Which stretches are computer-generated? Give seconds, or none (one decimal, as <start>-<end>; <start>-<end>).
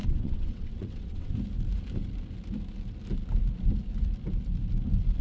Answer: 0.0-1.3